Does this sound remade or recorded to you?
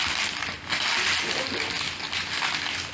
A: recorded